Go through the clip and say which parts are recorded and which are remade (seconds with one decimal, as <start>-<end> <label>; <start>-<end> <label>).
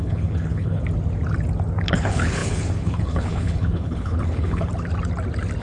0.0-0.8 remade; 0.8-1.9 recorded; 1.9-4.7 remade; 4.7-5.6 recorded